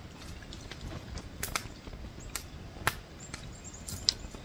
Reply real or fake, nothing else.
real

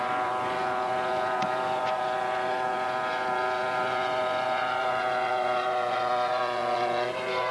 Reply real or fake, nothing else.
fake